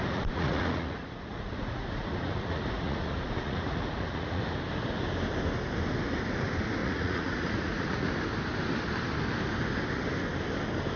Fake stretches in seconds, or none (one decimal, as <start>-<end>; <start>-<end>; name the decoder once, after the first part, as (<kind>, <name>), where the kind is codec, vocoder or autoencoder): 0.0-4.4 (vocoder, Vocos); 6.8-8.1